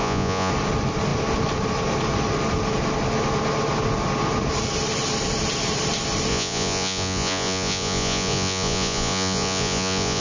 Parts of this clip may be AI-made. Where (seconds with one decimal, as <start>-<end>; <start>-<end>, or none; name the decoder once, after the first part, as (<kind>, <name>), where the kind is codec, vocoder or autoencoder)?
0.0-0.5 (vocoder, Vocos); 6.3-10.2